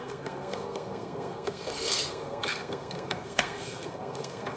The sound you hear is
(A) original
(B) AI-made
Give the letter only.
B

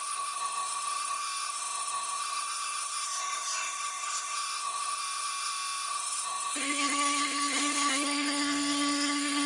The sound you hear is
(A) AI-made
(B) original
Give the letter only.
A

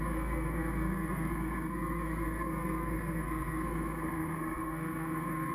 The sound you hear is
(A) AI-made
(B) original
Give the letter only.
A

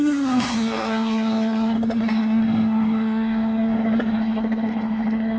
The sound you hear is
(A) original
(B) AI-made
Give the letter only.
B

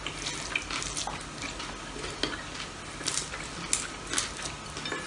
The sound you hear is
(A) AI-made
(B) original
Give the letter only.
B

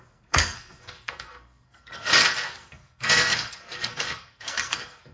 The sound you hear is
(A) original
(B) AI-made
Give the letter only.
B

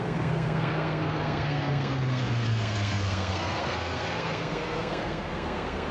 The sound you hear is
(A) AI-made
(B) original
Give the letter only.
A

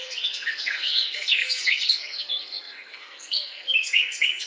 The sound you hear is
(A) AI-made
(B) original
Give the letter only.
A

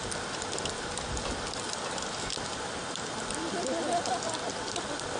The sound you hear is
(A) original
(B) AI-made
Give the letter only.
A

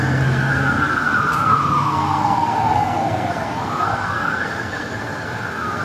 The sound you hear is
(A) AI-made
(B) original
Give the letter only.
A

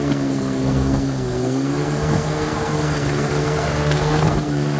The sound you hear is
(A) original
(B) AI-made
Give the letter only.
B